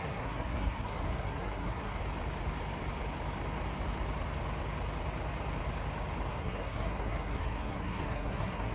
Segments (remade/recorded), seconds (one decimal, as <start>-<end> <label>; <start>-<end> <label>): 0.0-2.0 remade; 2.0-6.3 recorded; 6.3-8.7 remade